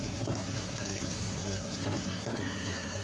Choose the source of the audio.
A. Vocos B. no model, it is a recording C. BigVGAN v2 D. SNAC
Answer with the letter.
D